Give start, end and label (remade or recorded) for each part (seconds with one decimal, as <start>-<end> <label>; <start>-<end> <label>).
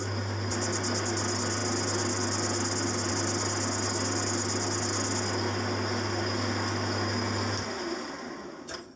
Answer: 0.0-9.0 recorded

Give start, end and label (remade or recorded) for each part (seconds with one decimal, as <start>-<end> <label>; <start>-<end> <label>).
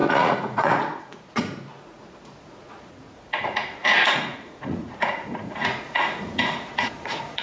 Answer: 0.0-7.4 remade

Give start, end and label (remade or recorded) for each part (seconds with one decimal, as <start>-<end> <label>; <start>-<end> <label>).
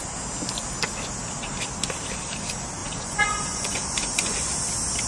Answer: 0.0-2.8 recorded; 2.8-4.6 remade; 4.6-5.1 recorded